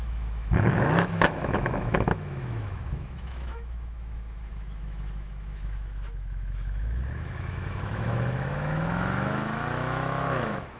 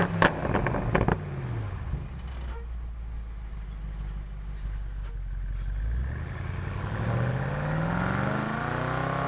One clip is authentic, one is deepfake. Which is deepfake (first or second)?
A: first